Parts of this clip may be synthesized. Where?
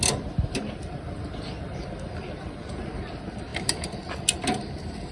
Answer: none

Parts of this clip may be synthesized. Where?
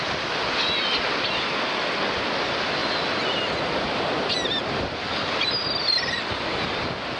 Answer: none